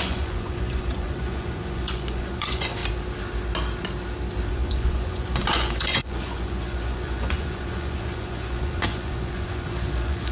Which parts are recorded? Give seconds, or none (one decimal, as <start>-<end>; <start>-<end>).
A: 2.8-4.5